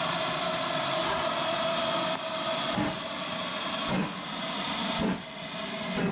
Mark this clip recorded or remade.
recorded